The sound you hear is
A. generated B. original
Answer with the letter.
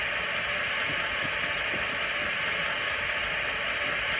B